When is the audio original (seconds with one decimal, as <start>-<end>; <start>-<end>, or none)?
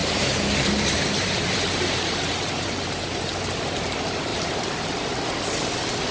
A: 3.5-4.3; 4.9-6.1